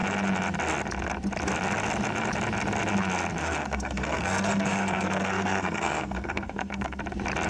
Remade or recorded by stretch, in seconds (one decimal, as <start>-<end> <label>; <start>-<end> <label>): 0.0-3.4 recorded; 3.4-7.0 remade; 7.0-7.5 recorded